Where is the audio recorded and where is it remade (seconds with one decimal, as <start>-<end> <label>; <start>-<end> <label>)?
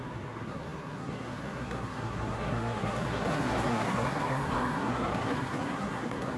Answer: 0.0-6.4 remade